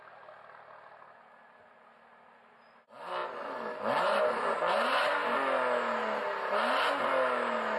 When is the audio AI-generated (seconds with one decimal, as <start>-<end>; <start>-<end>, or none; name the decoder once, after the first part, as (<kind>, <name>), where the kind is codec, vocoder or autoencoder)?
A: none